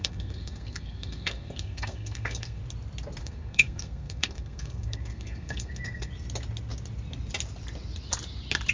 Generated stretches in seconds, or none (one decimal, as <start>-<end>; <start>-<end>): 0.0-2.6; 3.2-6.1